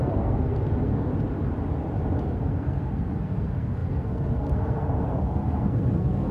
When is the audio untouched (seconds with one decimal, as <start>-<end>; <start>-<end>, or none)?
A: 1.1-2.2